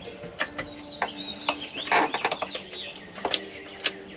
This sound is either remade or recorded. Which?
recorded